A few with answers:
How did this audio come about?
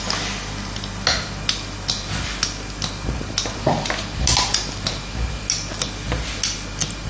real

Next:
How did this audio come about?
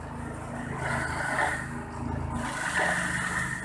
real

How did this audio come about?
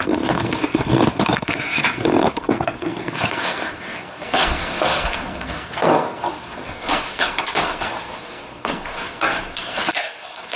fake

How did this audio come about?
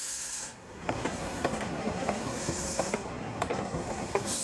fake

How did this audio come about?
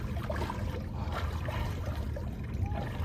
real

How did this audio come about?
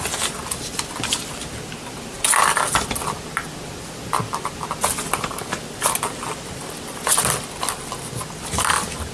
real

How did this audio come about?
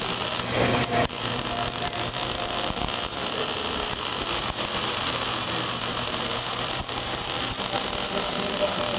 real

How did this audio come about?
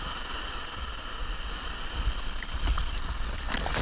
real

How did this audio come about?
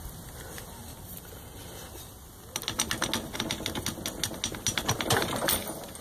real